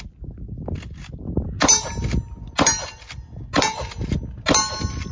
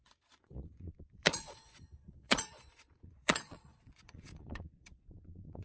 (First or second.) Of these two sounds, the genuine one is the first